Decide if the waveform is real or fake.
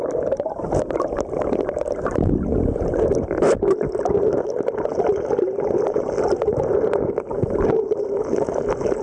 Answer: real